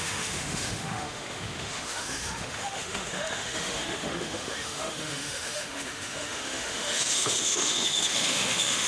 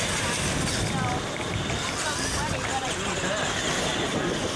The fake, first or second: first